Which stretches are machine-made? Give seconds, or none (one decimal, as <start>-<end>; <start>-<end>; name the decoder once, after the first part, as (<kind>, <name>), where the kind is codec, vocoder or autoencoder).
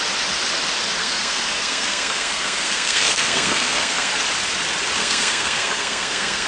1.0-4.1 (codec, SNAC); 5.0-6.5